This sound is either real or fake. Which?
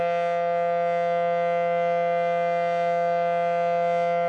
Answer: real